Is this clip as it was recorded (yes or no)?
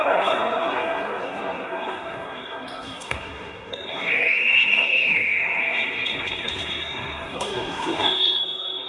no